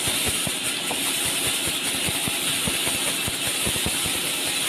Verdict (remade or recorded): recorded